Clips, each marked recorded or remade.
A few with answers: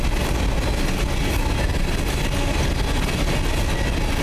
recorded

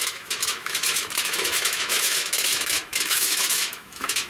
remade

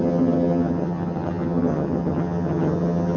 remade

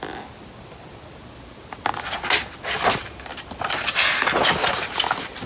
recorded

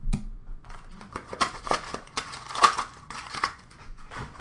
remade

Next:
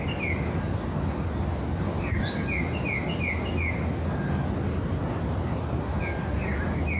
recorded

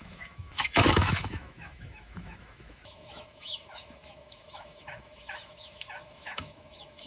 remade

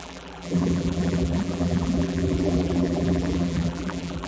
remade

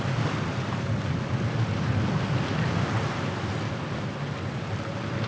recorded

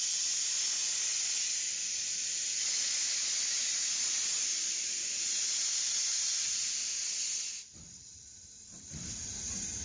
recorded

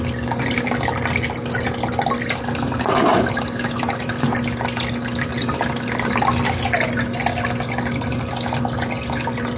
recorded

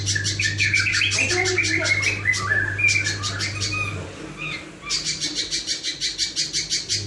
recorded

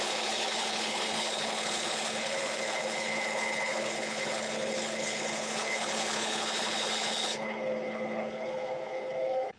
remade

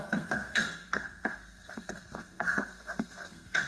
remade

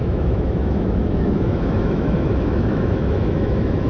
remade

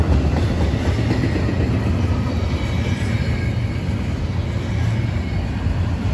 recorded